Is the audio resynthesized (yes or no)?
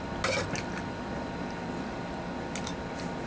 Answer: no